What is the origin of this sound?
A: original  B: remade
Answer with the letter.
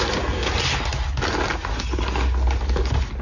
A